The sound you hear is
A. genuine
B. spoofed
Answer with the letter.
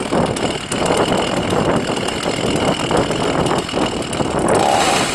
A